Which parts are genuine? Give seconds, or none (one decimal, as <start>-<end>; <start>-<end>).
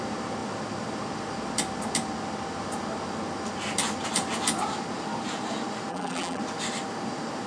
0.0-5.9; 6.4-7.5